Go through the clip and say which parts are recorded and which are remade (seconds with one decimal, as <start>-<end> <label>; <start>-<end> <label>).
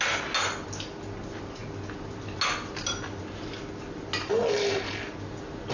0.0-5.7 recorded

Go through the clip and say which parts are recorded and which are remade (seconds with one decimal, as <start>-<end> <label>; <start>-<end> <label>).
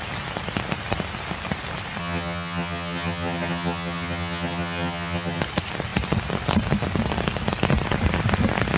0.0-2.0 recorded; 2.0-5.4 remade; 5.4-8.8 recorded